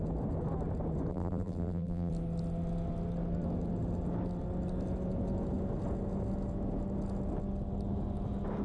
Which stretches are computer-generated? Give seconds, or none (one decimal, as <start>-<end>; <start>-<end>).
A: 1.1-2.1